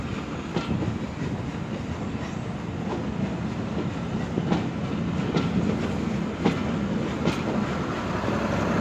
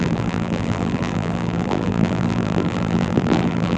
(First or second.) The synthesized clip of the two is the second